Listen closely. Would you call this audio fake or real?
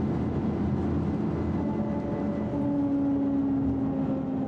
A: real